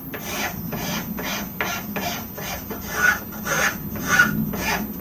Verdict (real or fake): real